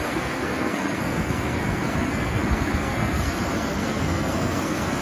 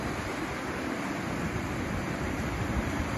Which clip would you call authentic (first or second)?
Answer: second